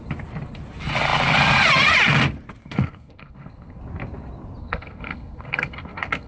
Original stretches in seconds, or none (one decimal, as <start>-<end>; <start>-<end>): 0.0-2.6; 3.8-4.6